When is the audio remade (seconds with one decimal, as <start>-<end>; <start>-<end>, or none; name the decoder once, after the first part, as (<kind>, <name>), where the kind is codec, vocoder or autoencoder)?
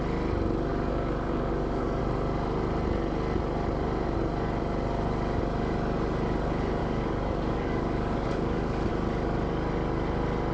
0.7-2.0 (codec, DAC); 6.8-8.9